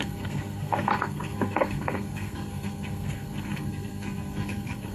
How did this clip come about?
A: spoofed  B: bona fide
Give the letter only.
A